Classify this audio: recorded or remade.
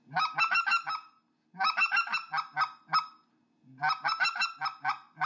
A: recorded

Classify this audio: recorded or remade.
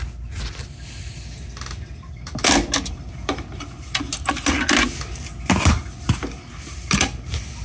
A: recorded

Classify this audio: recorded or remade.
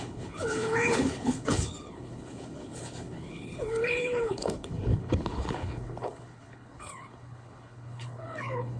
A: remade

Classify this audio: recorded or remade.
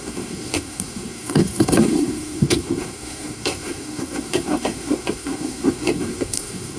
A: remade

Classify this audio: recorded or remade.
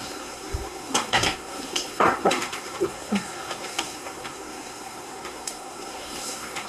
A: remade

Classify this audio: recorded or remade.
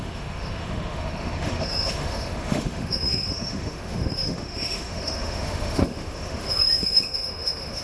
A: remade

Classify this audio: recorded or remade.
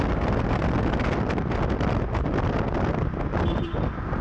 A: recorded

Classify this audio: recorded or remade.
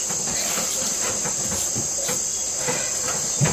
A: recorded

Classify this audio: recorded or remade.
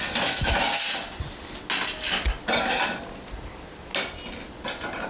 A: recorded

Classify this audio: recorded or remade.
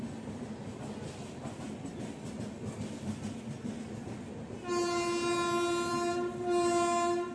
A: recorded